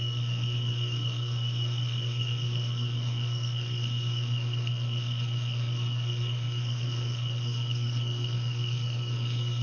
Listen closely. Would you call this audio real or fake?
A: fake